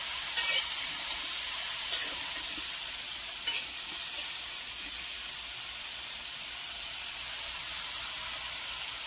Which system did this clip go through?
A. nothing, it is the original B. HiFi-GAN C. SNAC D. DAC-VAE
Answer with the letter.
A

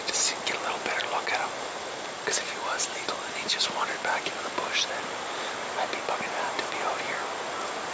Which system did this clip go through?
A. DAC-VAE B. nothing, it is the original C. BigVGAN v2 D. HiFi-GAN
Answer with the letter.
B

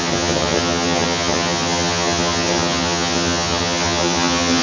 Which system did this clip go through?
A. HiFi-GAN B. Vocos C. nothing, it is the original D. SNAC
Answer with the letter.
A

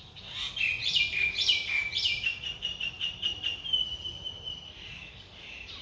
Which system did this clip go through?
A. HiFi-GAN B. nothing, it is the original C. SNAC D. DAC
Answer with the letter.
B